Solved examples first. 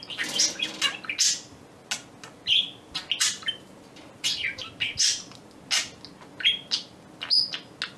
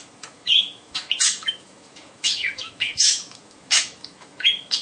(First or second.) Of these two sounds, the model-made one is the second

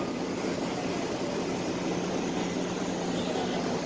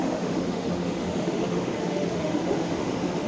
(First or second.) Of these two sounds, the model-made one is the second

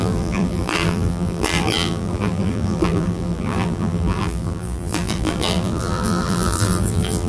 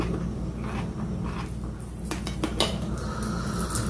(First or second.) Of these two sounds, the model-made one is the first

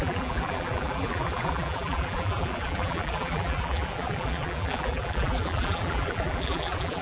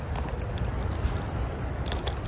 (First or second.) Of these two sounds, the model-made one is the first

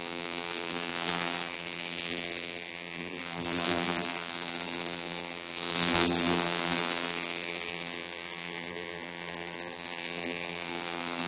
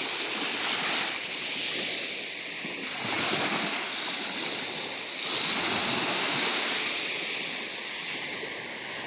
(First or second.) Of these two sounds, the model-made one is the first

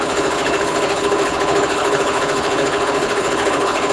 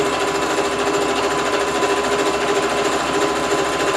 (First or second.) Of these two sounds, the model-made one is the first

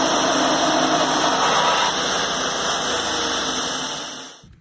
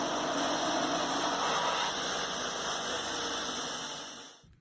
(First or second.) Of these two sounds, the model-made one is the second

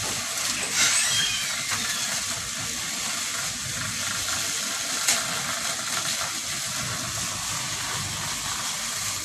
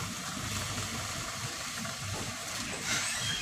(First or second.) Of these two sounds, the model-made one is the second